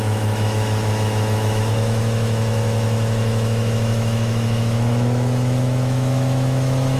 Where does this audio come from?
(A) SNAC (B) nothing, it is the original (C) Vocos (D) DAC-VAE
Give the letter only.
D